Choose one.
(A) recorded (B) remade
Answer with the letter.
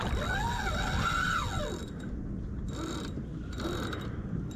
A